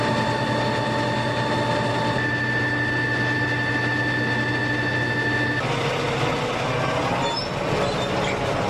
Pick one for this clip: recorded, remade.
recorded